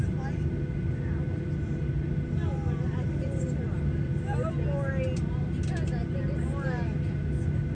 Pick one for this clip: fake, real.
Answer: real